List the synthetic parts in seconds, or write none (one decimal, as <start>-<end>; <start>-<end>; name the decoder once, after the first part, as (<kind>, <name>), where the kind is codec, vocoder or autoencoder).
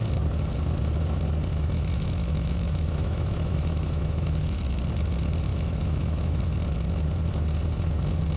1.5-4.8 (autoencoder, DAC-VAE); 5.5-6.4